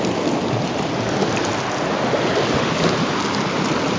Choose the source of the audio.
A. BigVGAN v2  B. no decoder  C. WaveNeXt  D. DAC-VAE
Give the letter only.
B